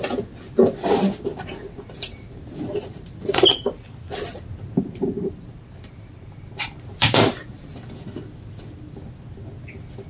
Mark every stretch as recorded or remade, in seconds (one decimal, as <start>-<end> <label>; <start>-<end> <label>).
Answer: 0.0-1.3 recorded; 1.3-3.9 remade; 3.9-4.3 recorded; 4.3-7.7 remade; 7.7-10.1 recorded